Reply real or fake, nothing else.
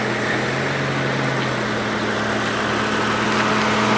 real